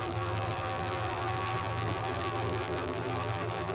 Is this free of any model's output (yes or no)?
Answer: no